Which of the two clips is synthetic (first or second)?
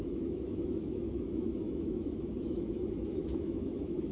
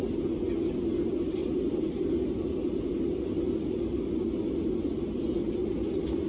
first